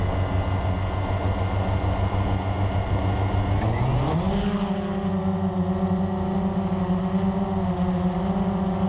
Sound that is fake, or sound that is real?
real